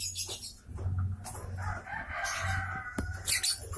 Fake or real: real